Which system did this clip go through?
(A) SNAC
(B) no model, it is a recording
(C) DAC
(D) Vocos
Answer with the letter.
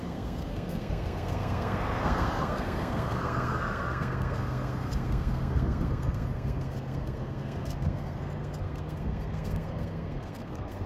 A